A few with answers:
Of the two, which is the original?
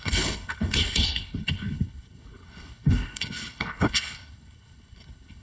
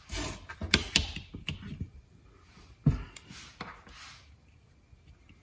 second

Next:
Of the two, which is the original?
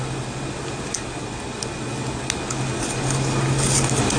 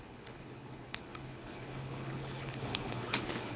first